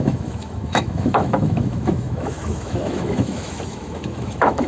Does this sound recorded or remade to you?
remade